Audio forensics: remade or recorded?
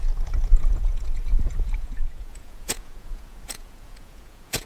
remade